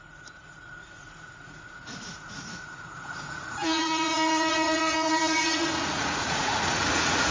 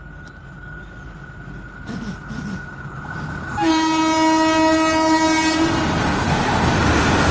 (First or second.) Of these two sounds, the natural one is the second